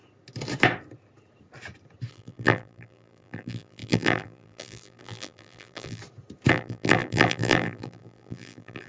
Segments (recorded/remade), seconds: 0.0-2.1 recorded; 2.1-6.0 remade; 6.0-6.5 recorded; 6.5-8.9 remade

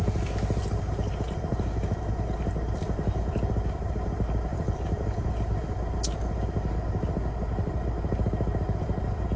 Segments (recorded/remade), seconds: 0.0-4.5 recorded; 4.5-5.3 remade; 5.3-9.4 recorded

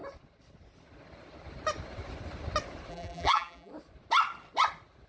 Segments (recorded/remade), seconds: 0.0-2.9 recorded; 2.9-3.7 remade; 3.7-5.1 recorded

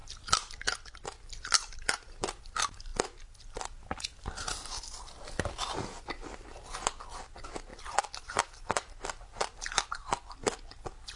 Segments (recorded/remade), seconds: 0.0-2.4 remade; 2.4-7.7 recorded; 7.7-9.9 remade; 9.9-11.2 recorded